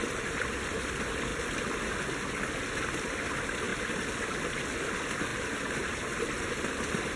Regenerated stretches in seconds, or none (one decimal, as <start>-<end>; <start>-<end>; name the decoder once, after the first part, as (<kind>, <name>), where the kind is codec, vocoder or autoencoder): none